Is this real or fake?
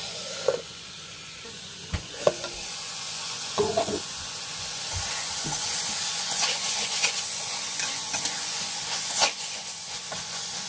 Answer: fake